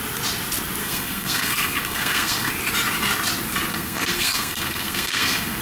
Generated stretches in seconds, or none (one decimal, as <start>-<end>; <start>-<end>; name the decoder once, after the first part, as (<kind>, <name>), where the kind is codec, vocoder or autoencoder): 0.8-2.5 (codec, SNAC); 3.7-5.6